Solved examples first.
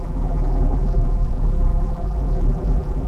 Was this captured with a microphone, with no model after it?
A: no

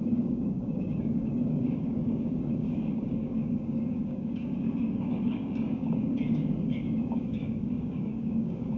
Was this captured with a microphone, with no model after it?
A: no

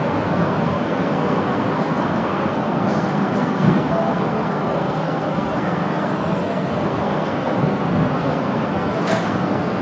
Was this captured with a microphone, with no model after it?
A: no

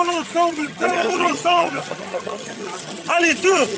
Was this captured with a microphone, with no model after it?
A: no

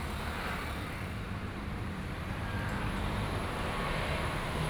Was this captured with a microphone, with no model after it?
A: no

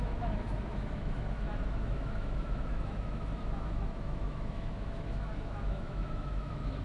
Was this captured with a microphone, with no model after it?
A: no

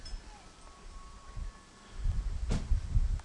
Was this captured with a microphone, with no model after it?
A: no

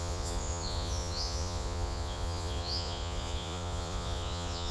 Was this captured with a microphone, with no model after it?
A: no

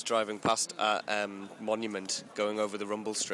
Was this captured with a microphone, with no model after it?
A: yes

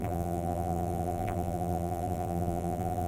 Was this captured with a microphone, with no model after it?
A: no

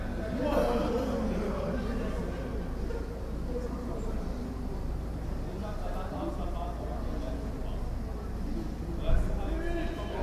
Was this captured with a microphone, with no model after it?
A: yes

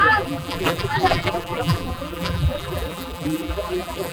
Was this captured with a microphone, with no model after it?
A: no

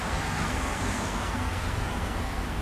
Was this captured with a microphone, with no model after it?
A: no